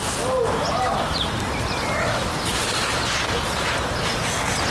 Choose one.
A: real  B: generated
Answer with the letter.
A